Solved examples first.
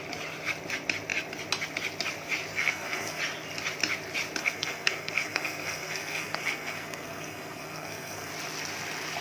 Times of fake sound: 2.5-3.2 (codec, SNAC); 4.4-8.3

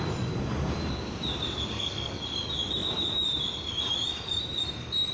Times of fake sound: 1.7-2.2 (codec, SNAC)